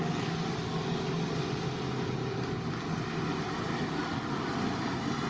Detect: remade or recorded recorded